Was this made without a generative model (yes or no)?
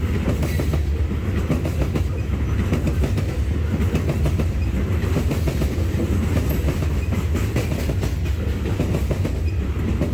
yes